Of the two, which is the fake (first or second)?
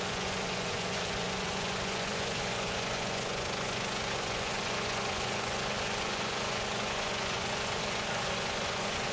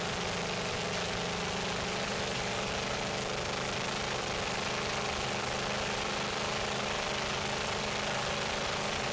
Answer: first